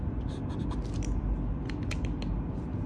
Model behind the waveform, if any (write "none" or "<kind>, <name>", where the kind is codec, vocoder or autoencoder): none